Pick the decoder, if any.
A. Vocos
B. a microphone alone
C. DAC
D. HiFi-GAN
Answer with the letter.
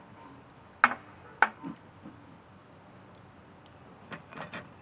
B